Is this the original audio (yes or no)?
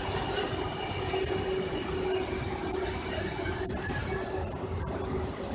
yes